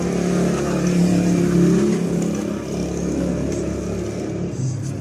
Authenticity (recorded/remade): recorded